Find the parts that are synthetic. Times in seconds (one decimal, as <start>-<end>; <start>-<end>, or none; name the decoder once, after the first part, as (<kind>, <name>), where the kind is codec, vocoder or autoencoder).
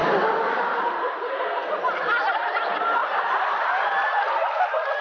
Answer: none